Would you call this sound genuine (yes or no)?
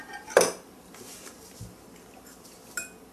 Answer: yes